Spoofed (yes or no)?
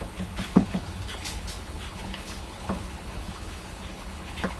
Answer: yes